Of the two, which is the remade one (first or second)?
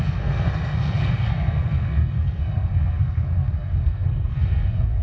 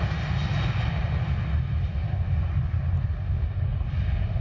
first